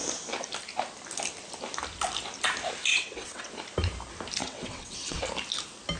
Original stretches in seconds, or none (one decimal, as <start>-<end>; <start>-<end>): 0.0-2.9; 3.5-4.4; 5.2-6.0